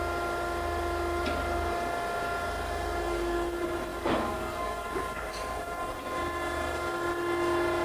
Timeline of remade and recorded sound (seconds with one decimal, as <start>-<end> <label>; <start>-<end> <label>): 0.0-3.9 recorded; 3.9-5.3 remade; 5.3-7.8 recorded

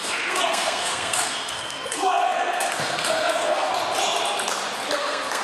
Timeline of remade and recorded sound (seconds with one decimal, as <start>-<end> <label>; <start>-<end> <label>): 0.0-3.7 remade; 3.7-5.0 recorded; 5.0-5.4 remade

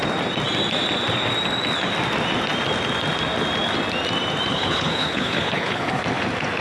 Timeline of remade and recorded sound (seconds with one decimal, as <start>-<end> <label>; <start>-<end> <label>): 0.0-4.5 recorded; 4.5-6.0 remade; 6.0-6.6 recorded

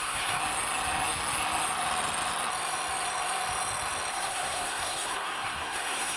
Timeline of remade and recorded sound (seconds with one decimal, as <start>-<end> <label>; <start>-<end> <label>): 0.0-0.4 remade; 0.4-4.1 recorded; 4.1-6.2 remade

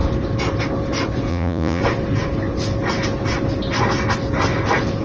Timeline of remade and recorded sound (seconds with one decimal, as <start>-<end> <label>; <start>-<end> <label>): 0.0-1.3 recorded; 1.3-1.8 remade; 1.8-5.0 recorded

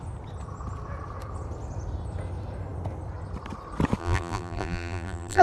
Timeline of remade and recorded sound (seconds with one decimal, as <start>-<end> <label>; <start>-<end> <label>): 0.0-4.0 recorded; 4.0-5.4 remade

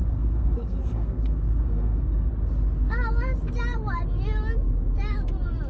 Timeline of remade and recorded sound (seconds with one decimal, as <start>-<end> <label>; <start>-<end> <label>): 0.0-2.3 remade; 2.3-5.7 recorded

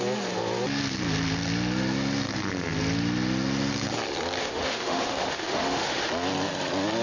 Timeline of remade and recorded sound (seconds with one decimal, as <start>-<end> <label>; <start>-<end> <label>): 0.0-4.4 recorded; 4.4-6.1 remade; 6.1-7.0 recorded